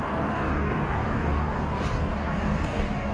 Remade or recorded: remade